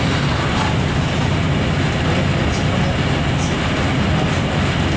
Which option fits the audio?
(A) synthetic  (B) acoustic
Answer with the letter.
B